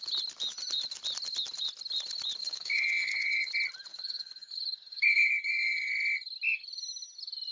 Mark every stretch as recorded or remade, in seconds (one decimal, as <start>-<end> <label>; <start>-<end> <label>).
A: 0.0-2.4 recorded; 2.4-3.5 remade; 3.5-3.9 recorded; 3.9-5.9 remade; 5.9-7.5 recorded